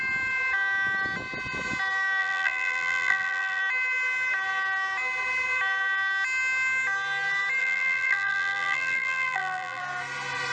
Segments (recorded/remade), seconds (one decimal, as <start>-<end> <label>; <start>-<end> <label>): 0.0-2.2 recorded; 2.2-3.6 remade; 3.6-7.6 recorded; 7.6-9.8 remade; 9.8-10.5 recorded